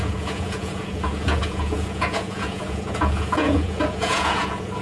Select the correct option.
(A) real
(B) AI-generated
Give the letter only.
B